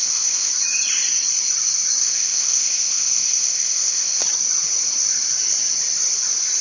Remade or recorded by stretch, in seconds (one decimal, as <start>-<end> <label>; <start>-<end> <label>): 0.0-0.5 remade; 0.5-2.0 recorded; 2.0-4.2 remade; 4.2-6.6 recorded